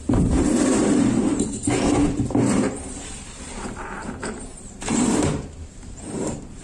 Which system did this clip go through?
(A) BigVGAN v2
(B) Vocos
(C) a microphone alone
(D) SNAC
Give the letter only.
A